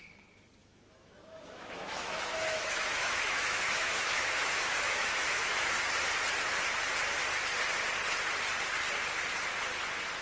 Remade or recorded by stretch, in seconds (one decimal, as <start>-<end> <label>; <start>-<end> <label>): 0.0-0.6 recorded; 0.6-5.7 remade; 5.7-10.2 recorded